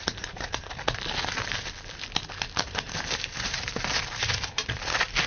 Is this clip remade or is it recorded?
recorded